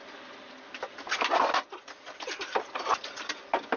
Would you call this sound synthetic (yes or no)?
yes